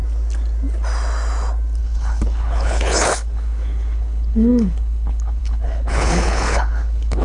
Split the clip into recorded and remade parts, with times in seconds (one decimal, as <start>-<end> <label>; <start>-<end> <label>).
0.0-1.8 recorded; 1.8-7.2 remade